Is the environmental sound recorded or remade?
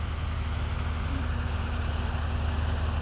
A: recorded